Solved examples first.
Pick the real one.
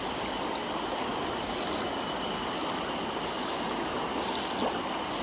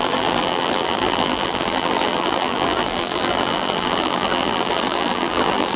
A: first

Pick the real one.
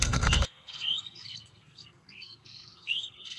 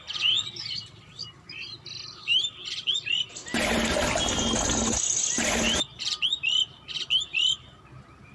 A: second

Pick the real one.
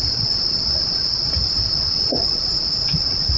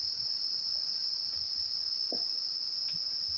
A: second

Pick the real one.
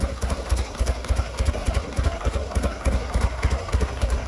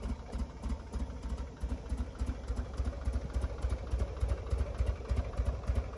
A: second